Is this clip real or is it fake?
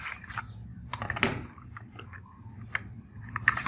real